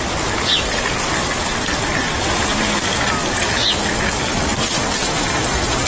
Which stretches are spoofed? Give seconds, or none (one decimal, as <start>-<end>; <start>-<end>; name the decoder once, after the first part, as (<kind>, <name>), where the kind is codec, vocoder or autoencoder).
4.5-5.9 (vocoder, BigVGAN v2)